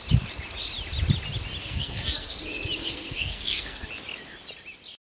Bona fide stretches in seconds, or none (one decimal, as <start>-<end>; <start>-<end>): 0.0-1.6; 2.4-2.8; 3.9-5.0